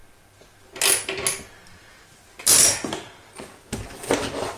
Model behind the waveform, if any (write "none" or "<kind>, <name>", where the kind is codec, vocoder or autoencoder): none